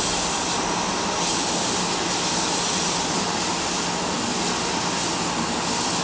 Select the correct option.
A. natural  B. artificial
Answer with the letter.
A